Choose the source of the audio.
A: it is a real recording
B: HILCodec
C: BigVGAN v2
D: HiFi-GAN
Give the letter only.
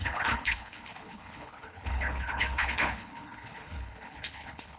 B